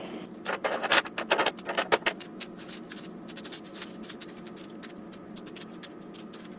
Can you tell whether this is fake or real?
real